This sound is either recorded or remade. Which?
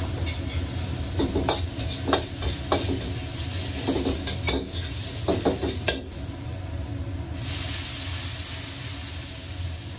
recorded